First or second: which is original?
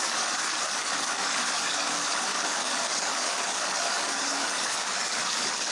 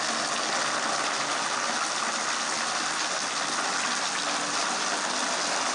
second